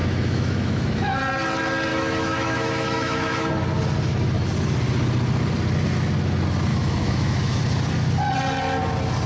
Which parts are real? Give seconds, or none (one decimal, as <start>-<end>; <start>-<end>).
1.2-1.9; 3.5-6.7; 7.6-9.3